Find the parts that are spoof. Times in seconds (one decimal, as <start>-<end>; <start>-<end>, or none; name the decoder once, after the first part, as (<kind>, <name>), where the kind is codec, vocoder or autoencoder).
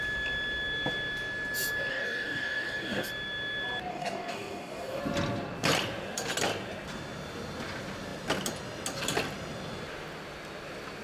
1.9-3.1 (codec, DAC); 3.9-5.0